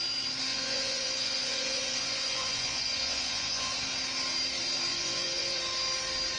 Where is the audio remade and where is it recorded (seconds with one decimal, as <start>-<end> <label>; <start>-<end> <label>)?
0.0-0.5 recorded; 0.5-3.7 remade; 3.7-4.9 recorded; 4.9-5.6 remade; 5.6-6.4 recorded

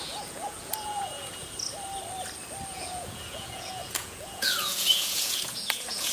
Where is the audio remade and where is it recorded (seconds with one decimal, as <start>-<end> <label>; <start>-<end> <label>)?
0.0-1.4 remade; 1.4-2.7 recorded; 2.7-6.1 remade

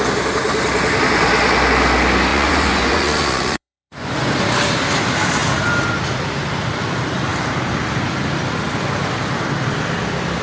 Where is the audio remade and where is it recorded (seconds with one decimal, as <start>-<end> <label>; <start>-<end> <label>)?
0.0-2.3 recorded; 2.3-4.3 remade; 4.3-10.4 recorded

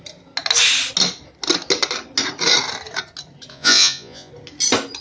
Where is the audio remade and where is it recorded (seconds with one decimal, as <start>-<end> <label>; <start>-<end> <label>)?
0.0-3.5 recorded; 3.5-4.3 remade; 4.3-5.0 recorded

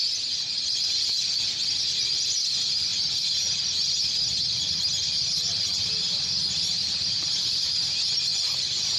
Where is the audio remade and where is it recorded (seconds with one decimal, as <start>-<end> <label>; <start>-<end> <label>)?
0.0-9.0 recorded

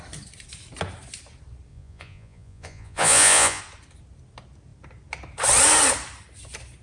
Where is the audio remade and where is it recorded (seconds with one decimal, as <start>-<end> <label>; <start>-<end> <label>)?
0.0-1.7 recorded; 1.7-3.6 remade; 3.6-6.8 recorded

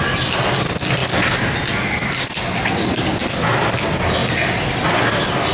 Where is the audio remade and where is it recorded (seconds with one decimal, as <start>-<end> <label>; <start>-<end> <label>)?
0.0-5.5 recorded

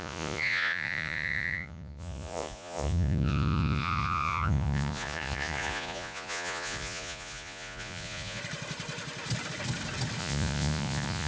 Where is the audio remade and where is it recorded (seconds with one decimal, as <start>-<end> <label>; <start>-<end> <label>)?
0.0-8.4 remade; 8.4-10.2 recorded; 10.2-11.3 remade